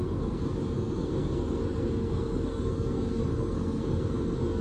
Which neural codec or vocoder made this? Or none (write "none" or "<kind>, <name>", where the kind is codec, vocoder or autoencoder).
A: codec, SNAC